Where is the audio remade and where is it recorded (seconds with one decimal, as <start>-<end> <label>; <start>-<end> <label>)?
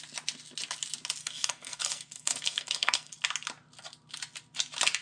0.0-1.2 recorded; 1.2-3.1 remade; 3.1-5.0 recorded